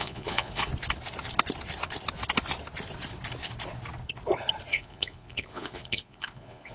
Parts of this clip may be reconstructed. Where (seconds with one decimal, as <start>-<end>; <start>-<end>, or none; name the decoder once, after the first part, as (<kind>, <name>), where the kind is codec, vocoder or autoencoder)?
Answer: 0.0-0.7 (vocoder, Vocos); 4.7-6.7